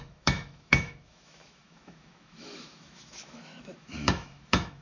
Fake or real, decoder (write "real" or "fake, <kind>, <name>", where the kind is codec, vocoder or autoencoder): fake, autoencoder, DAC-VAE